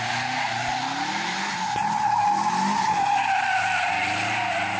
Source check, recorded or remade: recorded